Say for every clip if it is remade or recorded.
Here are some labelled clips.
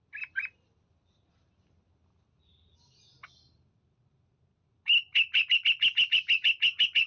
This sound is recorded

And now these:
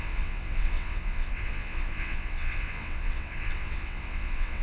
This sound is remade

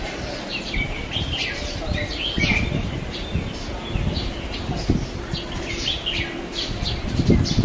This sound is recorded